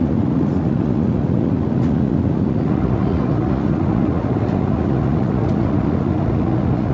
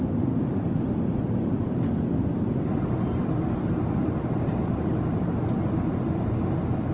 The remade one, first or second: first